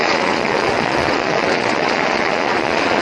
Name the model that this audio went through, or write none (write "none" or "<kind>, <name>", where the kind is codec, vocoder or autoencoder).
vocoder, Vocos